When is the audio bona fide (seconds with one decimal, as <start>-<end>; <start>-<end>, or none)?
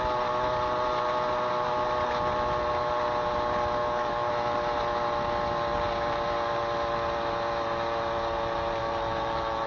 0.0-3.8; 4.3-8.8